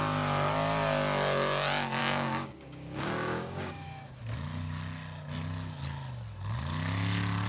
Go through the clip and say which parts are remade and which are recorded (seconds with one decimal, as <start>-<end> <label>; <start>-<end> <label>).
0.0-2.0 recorded; 2.0-4.2 remade; 4.2-7.5 recorded